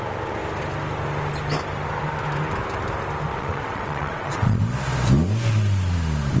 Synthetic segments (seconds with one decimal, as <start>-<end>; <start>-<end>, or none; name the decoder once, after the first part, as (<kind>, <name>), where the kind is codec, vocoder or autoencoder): 3.3-4.6 (vocoder, WaveNeXt)